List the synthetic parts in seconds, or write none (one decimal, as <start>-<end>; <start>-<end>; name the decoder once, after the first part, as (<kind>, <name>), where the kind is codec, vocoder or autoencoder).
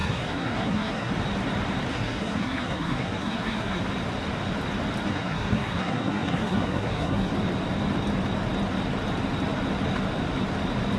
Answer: 0.0-1.1 (codec, SNAC); 1.9-3.8; 5.1-7.3